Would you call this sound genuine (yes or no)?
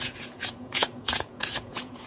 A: no